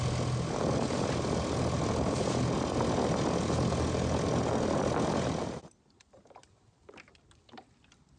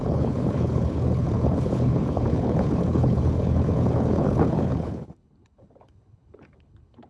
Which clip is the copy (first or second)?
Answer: second